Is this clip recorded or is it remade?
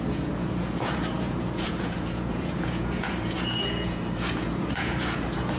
remade